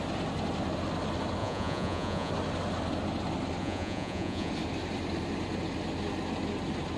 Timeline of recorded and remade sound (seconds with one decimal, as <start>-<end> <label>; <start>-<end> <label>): 0.0-1.4 recorded; 1.4-2.3 remade; 2.3-3.6 recorded; 3.6-4.5 remade; 4.5-7.0 recorded